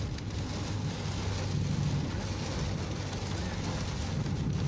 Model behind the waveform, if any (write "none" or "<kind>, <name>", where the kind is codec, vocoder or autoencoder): none